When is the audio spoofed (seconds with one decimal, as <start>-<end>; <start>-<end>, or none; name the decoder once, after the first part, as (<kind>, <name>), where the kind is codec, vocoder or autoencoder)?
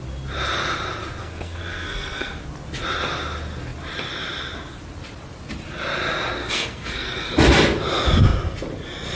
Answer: 1.2-2.4 (codec, SNAC); 6.4-7.3